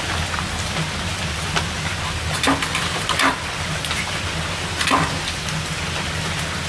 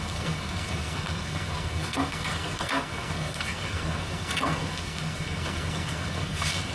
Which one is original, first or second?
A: first